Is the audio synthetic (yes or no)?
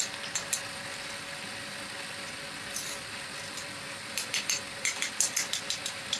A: yes